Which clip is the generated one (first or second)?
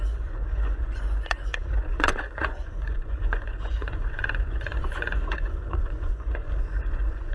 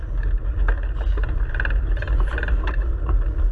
first